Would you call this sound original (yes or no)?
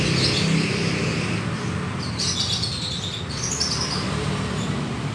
yes